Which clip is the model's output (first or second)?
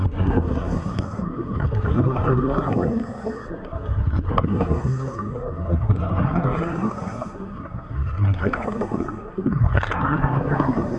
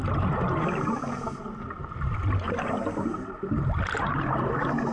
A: first